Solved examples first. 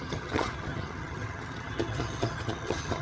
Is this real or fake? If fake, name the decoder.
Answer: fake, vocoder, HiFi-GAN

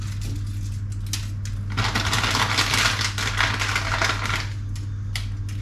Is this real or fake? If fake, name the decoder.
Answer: real